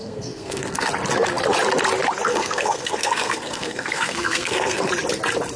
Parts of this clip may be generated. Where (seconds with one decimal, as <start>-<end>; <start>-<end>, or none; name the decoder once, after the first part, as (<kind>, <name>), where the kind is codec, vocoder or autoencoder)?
0.0-0.9 (codec, SNAC); 2.3-4.9